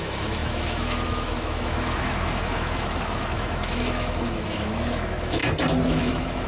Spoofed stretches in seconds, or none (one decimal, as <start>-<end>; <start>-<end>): 0.0-5.4; 5.9-6.5